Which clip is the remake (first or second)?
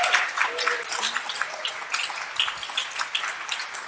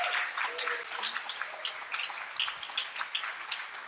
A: first